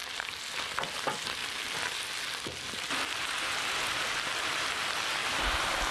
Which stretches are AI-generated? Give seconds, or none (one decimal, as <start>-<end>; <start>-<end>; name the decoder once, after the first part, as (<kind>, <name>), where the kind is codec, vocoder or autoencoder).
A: 5.2-5.9 (vocoder, BigVGAN v2)